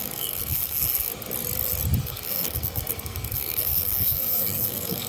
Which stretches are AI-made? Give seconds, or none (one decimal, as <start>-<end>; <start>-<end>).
0.0-1.1; 2.0-5.1